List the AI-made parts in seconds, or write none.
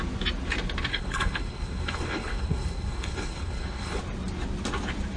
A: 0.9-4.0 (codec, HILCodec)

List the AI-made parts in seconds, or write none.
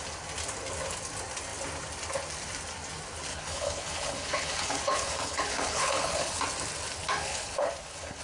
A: 3.3-6.4 (codec, HILCodec); 7.0-8.2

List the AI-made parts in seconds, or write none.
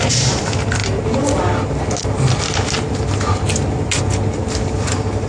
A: none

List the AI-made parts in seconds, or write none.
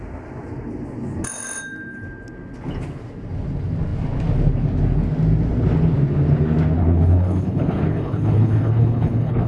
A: 6.8-9.5 (codec, HILCodec)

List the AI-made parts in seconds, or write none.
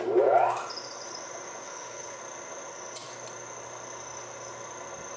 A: 1.6-2.2 (codec, HILCodec)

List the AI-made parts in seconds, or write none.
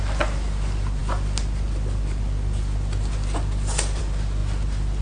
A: none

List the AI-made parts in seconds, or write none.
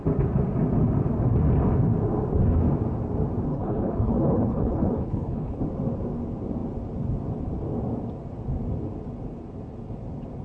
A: 3.5-5.6 (codec, HILCodec)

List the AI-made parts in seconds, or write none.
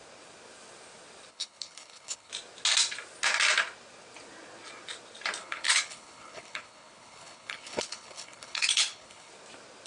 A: 1.3-2.3 (codec, HILCodec); 5.4-9.3